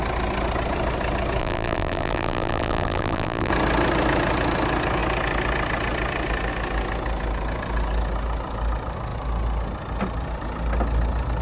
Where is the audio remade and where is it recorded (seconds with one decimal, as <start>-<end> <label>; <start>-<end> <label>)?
0.0-1.4 recorded; 1.4-3.5 remade; 3.5-11.4 recorded

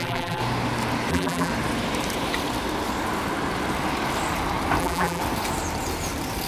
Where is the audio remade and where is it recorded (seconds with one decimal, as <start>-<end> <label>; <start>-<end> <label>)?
0.0-0.4 remade; 0.4-1.1 recorded; 1.1-1.5 remade; 1.5-4.8 recorded; 4.8-5.2 remade; 5.2-6.5 recorded

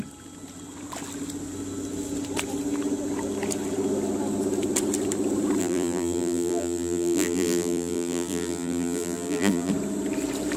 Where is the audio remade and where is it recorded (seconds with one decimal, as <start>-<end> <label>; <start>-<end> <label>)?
0.0-5.6 recorded; 5.6-9.7 remade; 9.7-10.6 recorded